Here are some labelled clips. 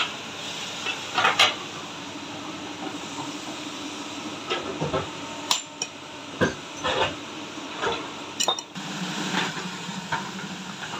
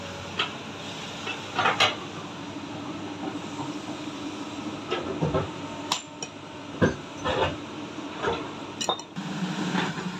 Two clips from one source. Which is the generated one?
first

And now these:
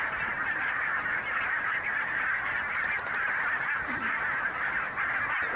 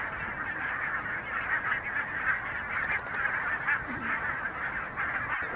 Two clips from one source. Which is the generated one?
first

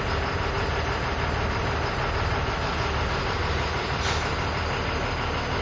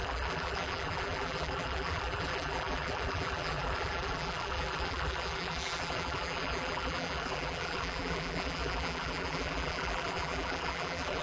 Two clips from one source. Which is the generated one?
second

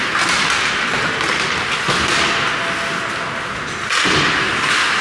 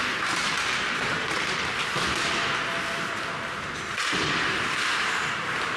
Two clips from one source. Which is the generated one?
second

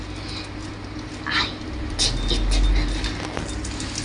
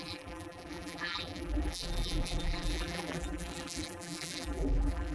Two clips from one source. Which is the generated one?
second